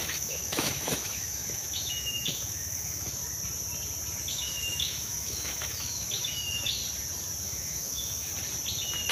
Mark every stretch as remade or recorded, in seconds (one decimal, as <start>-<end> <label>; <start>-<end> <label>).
0.0-3.2 remade; 3.2-4.3 recorded; 4.3-6.8 remade; 6.8-7.4 recorded; 7.4-8.3 remade; 8.3-9.1 recorded